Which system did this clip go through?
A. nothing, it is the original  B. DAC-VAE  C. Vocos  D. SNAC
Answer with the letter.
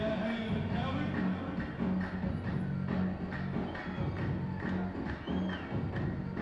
A